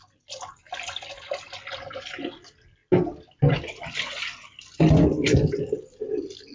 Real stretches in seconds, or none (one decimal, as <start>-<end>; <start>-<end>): 0.0-6.5